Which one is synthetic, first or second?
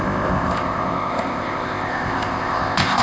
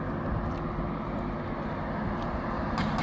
first